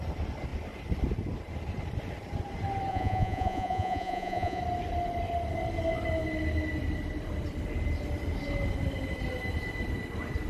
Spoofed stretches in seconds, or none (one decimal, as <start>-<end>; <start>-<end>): 2.9-4.6